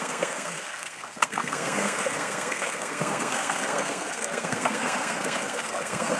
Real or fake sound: fake